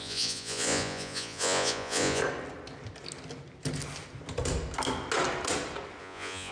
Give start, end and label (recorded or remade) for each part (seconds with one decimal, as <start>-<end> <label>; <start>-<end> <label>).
0.0-2.2 remade; 2.2-6.0 recorded; 6.0-6.5 remade